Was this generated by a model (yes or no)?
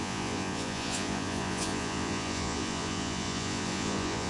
yes